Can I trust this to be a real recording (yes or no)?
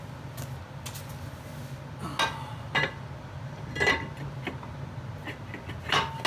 yes